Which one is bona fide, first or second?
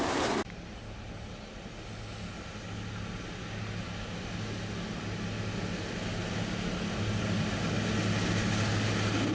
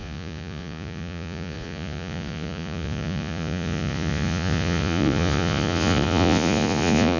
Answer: first